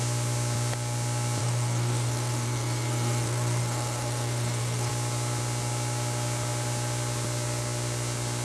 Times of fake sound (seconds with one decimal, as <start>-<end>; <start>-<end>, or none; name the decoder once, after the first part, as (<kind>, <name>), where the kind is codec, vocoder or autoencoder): 1.4-4.9 (codec, SNAC)